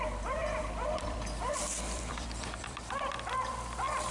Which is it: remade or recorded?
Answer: remade